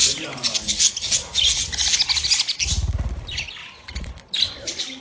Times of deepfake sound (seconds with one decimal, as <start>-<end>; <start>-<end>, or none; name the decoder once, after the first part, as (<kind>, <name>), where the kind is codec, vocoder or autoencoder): 3.6-4.1 (vocoder, Vocos)